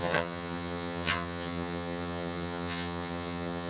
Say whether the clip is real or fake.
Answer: fake